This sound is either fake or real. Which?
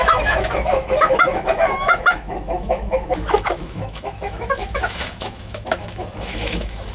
fake